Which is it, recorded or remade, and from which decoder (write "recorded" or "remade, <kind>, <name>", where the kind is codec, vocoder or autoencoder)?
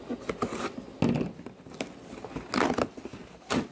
recorded